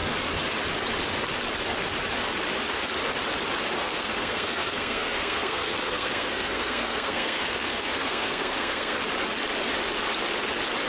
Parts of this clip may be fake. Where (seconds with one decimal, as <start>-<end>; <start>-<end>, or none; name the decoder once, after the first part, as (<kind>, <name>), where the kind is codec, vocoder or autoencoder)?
3.8-9.0 (codec, SNAC)